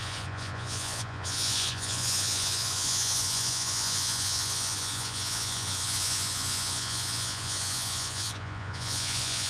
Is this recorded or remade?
remade